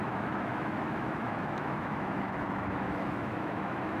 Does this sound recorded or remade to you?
remade